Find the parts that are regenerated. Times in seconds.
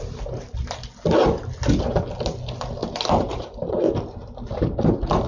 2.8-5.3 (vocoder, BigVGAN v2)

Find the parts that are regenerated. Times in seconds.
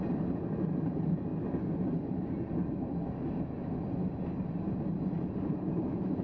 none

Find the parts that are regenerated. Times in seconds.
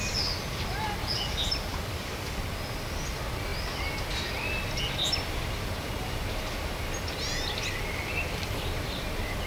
1.7-2.4 (codec, DAC)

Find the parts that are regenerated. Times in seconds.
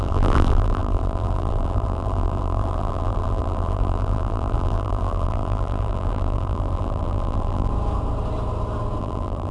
0.0-7.7 (vocoder, BigVGAN v2); 9.0-9.5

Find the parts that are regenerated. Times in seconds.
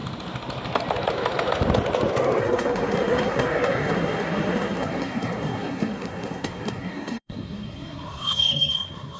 2.4-9.2 (codec, SNAC)